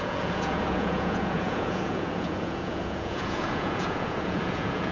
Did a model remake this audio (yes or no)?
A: yes